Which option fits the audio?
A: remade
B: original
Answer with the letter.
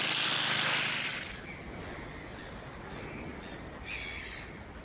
B